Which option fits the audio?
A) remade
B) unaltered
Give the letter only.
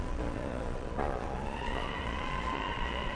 A